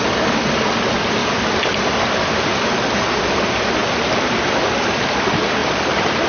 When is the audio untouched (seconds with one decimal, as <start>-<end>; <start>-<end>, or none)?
1.2-1.8; 2.5-3.3